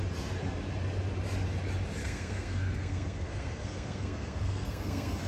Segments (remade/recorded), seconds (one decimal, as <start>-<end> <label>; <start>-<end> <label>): 0.0-2.0 recorded; 2.0-5.3 remade